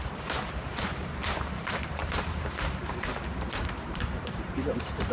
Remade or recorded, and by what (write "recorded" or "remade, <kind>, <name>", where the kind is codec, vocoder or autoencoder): remade, vocoder, BigVGAN v2